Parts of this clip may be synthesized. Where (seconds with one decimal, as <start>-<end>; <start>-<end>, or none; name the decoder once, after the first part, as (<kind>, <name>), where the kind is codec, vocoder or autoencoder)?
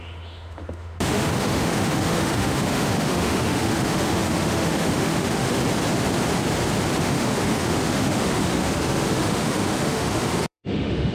0.0-5.6 (autoencoder, DAC-VAE); 7.0-11.1